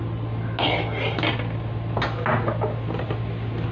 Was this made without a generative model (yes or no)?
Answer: yes